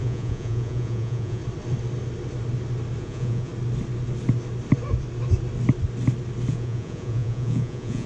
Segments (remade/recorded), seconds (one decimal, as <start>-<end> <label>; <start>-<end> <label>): 0.0-1.4 remade; 1.4-3.0 recorded; 3.0-3.5 remade; 3.5-6.5 recorded; 6.5-8.1 remade